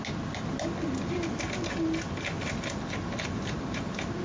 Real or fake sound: real